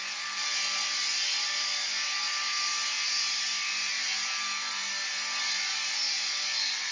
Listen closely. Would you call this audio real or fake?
real